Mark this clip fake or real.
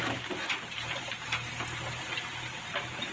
fake